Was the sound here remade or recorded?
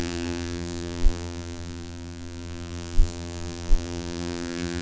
remade